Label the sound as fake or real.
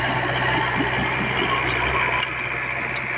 real